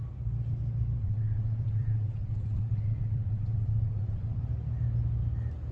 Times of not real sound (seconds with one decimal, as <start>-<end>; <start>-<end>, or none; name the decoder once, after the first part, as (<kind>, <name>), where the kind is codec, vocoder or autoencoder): 1.0-4.4 (vocoder, WaveNeXt)